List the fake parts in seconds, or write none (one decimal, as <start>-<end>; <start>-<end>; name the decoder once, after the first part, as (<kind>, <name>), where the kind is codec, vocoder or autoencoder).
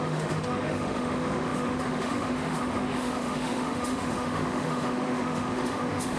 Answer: 0.0-6.2 (autoencoder, DAC-VAE)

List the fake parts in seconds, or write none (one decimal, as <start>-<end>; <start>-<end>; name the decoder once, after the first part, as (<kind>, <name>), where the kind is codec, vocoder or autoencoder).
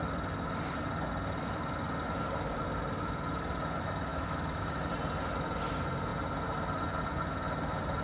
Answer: 4.1-4.9 (autoencoder, DAC-VAE)